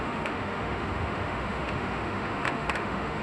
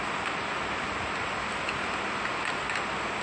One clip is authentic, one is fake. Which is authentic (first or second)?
second